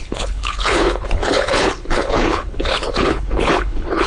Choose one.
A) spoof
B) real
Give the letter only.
A